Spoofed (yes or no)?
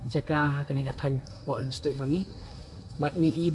yes